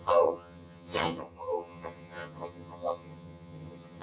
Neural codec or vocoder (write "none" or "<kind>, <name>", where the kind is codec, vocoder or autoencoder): vocoder, HiFi-GAN